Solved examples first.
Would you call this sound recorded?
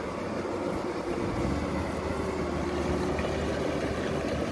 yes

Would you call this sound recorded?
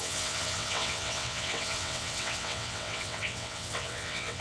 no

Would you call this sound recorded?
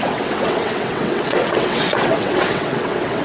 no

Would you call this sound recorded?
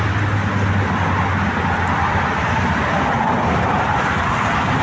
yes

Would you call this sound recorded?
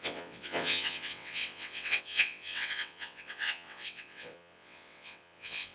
no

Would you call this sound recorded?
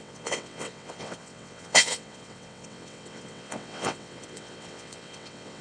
no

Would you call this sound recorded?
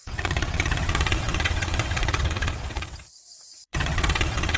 no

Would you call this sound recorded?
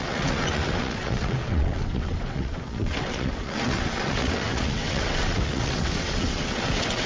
no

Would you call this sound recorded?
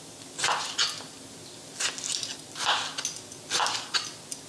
yes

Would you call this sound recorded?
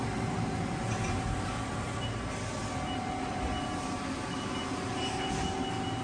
yes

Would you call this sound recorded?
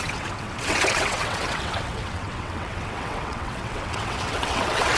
no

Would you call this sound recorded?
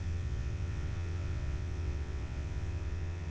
no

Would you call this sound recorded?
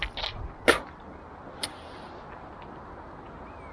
yes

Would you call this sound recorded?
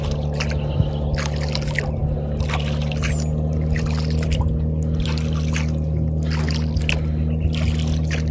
yes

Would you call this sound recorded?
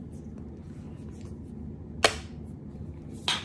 yes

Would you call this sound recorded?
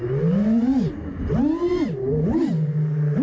yes